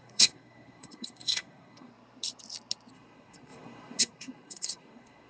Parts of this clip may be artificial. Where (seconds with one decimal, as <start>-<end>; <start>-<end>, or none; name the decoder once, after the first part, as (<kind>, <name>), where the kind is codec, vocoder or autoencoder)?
0.0-1.9 (codec, SNAC); 2.9-5.3